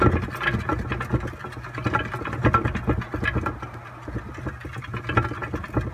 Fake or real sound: real